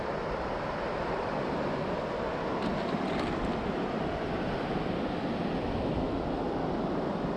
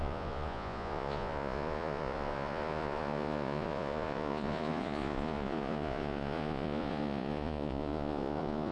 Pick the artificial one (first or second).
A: second